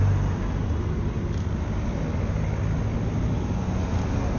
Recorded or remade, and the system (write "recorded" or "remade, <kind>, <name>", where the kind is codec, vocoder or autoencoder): recorded